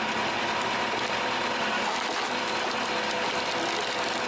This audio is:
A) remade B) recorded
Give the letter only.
B